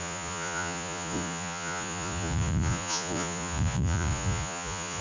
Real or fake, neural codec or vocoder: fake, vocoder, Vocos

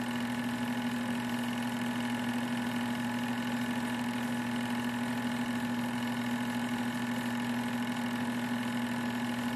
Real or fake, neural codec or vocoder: real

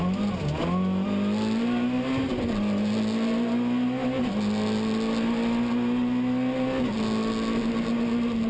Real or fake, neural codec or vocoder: real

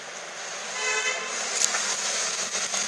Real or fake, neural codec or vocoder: real